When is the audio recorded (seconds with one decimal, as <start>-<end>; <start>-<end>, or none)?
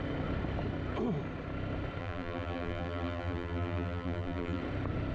0.0-2.0; 4.6-5.1